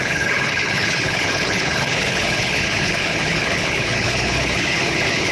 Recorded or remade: remade